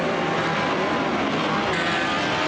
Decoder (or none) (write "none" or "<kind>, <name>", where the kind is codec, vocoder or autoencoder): none